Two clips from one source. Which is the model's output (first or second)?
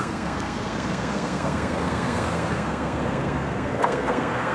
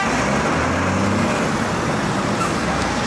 first